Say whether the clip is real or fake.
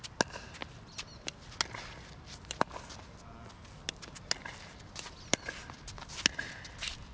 real